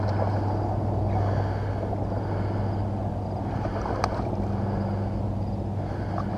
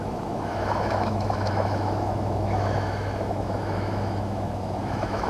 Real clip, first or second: first